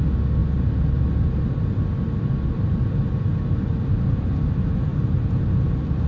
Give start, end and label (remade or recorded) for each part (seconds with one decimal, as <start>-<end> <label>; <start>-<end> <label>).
0.0-6.1 recorded